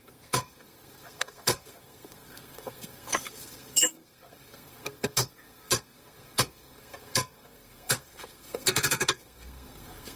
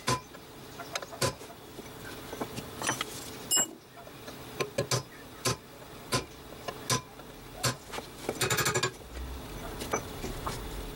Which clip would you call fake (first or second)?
first